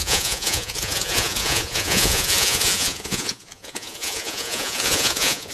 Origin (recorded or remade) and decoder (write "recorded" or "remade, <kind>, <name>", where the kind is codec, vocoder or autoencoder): remade, vocoder, Vocos